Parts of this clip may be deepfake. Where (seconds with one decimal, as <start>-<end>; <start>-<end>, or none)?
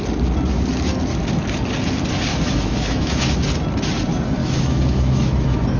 2.3-3.4; 4.4-5.8